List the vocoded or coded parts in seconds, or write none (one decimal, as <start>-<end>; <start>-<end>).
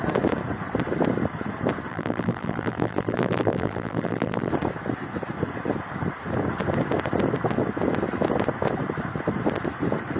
1.9-4.5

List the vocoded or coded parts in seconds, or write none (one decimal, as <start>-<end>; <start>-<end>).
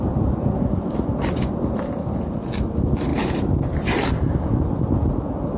3.1-5.6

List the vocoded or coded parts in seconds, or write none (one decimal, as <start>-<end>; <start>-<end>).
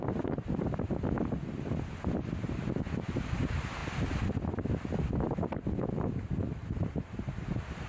3.8-7.9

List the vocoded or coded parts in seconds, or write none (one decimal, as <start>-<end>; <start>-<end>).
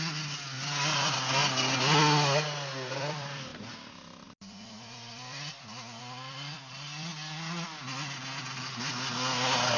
0.0-1.4; 3.0-7.1; 8.4-9.8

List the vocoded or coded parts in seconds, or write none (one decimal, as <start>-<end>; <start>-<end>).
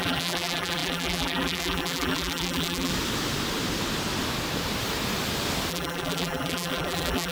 0.0-2.9; 5.7-7.3